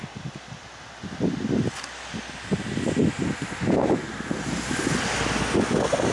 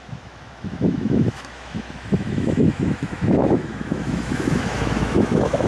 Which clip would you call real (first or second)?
first